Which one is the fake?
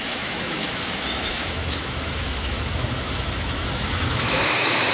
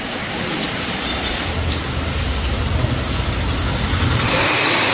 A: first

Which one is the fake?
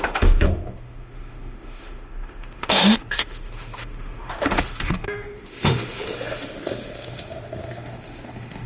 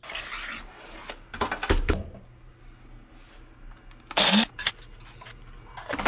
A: first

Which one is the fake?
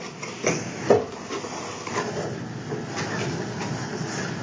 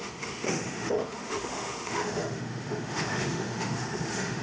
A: second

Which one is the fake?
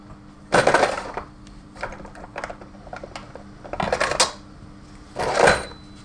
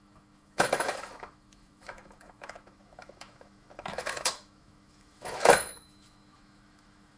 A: second